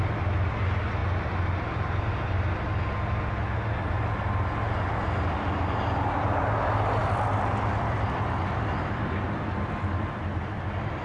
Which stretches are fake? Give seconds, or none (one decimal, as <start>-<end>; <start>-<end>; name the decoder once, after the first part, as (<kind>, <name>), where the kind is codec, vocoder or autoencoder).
7.0-10.4 (vocoder, BigVGAN v2)